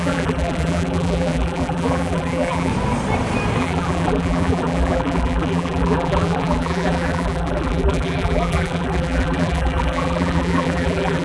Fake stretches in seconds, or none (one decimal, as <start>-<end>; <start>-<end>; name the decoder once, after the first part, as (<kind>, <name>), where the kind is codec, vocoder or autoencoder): 0.0-2.7 (vocoder, BigVGAN v2); 3.6-11.2